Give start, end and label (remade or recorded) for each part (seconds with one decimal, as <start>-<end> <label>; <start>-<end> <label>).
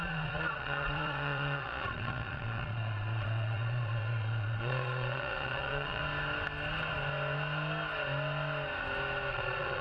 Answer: 0.0-6.0 remade; 6.0-9.3 recorded; 9.3-9.8 remade